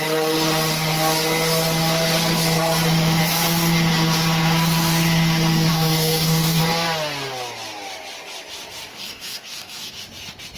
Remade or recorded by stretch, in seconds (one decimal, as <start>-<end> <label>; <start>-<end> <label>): 0.0-5.7 recorded; 5.7-6.6 remade; 6.6-8.9 recorded; 8.9-9.9 remade; 9.9-10.6 recorded